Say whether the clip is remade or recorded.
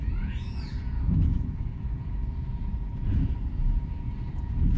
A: remade